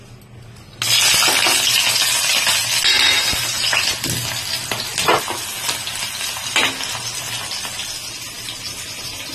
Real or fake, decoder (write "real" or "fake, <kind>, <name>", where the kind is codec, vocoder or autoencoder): real